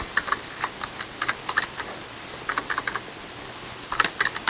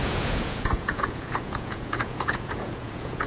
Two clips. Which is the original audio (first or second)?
first